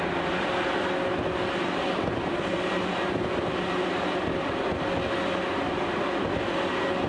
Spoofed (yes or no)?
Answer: no